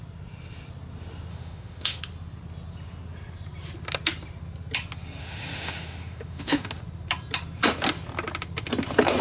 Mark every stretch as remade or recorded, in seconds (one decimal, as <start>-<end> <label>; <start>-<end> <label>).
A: 0.0-1.3 recorded; 1.3-2.0 remade; 2.0-5.2 recorded; 5.2-6.8 remade; 6.8-9.2 recorded